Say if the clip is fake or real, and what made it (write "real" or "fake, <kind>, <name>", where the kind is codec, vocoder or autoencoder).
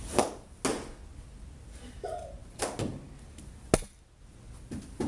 real